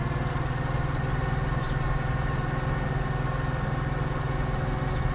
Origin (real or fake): real